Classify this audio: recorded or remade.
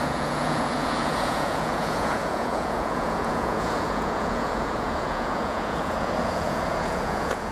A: remade